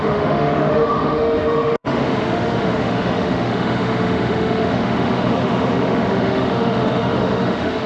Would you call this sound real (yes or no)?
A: no